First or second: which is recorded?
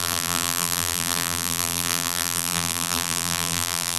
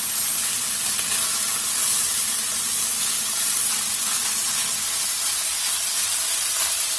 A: second